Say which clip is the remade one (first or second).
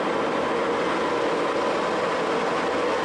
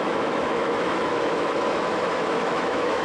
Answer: second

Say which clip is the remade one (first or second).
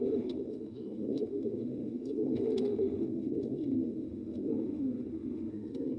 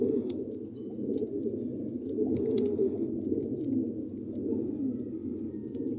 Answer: first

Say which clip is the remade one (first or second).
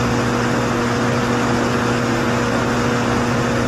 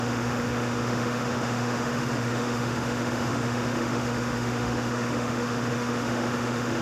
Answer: second